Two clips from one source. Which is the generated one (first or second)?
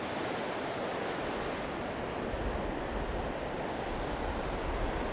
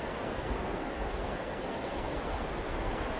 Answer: second